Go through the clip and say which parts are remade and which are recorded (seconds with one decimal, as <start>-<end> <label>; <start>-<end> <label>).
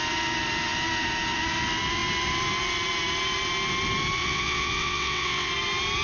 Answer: 0.0-4.2 recorded; 4.2-5.5 remade; 5.5-6.0 recorded